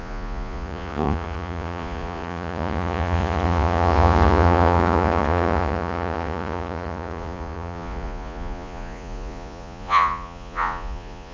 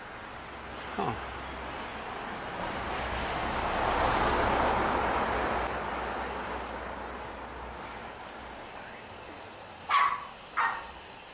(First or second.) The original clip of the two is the second